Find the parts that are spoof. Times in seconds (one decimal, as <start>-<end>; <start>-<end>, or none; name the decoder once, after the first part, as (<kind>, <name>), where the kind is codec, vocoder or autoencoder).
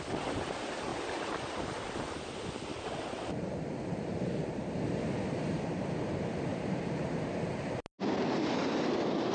2.7-5.1 (vocoder, BigVGAN v2); 6.5-7.1